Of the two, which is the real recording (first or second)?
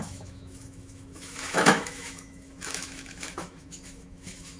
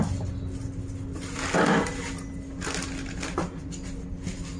second